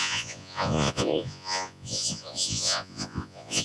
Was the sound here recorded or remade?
remade